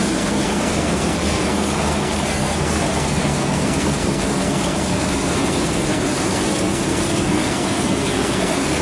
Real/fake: fake